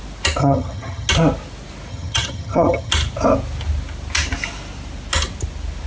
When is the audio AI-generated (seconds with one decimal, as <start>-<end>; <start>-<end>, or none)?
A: 0.4-1.1; 1.9-2.9